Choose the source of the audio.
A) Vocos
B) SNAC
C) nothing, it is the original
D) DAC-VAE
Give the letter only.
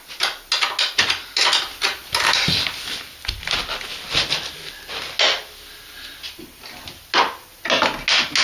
C